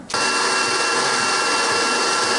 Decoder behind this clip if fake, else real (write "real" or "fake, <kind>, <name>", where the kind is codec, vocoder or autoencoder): real